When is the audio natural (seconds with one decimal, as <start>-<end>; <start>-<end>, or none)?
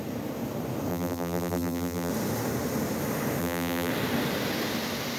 0.0-0.9; 2.1-3.4; 3.9-5.2